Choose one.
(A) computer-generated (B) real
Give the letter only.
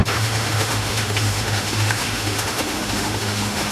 A